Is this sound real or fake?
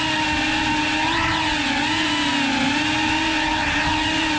real